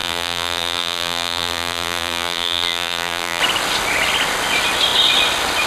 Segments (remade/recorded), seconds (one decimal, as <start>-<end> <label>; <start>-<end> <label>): 0.0-3.4 remade; 3.4-5.7 recorded